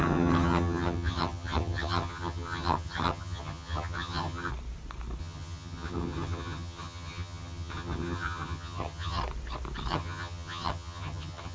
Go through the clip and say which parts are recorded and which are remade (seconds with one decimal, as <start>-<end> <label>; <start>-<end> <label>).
0.0-4.5 remade; 4.5-5.2 recorded; 5.2-9.2 remade; 9.2-9.9 recorded; 9.9-11.5 remade